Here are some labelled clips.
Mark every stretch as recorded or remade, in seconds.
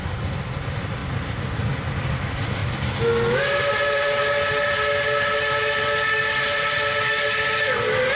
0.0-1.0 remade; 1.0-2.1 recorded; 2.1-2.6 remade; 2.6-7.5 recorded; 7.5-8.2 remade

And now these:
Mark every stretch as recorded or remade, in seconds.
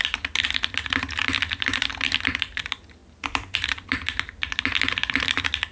0.0-3.0 recorded; 3.0-4.6 remade; 4.6-5.7 recorded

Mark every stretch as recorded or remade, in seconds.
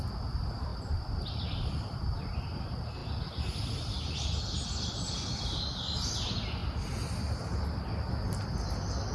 0.0-0.7 recorded; 0.7-2.6 remade; 2.6-9.1 recorded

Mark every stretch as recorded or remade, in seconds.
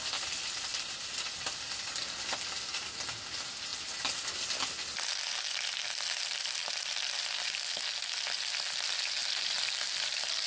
0.0-0.7 recorded; 0.7-2.6 remade; 2.6-6.6 recorded; 6.6-7.6 remade; 7.6-9.2 recorded; 9.2-9.8 remade; 9.8-10.5 recorded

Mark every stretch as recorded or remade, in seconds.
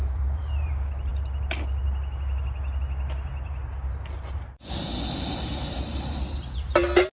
0.0-0.7 remade; 0.7-7.1 recorded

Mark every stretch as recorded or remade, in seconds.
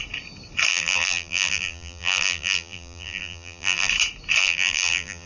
0.0-0.7 recorded; 0.7-3.9 remade; 3.9-4.4 recorded; 4.4-5.3 remade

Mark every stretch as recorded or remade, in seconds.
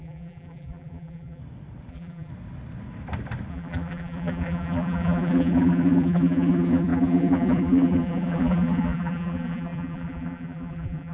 0.0-1.4 remade; 1.4-1.9 recorded; 1.9-2.3 remade; 2.3-3.5 recorded; 3.5-11.1 remade